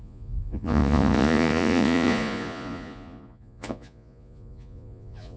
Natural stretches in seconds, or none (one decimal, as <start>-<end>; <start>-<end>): none